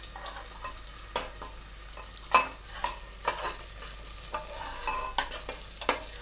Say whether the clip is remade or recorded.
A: recorded